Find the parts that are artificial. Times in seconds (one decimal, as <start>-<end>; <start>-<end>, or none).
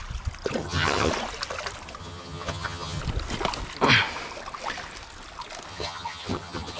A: 0.6-1.1; 2.0-3.0; 5.7-6.8